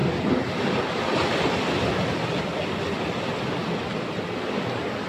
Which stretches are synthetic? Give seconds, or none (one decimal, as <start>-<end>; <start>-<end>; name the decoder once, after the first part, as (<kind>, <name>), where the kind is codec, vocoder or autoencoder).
0.0-1.7 (vocoder, BigVGAN v2)